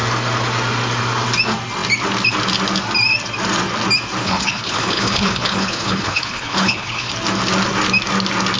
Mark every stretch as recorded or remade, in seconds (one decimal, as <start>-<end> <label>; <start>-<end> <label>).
0.0-4.2 recorded; 4.2-7.1 remade; 7.1-8.6 recorded